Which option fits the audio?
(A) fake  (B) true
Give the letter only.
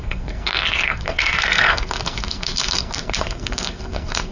A